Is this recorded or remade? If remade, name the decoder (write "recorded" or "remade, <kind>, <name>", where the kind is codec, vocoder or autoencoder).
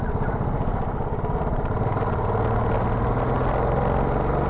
recorded